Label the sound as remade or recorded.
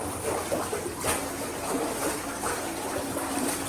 recorded